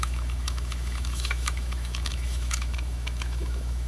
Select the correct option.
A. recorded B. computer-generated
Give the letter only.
B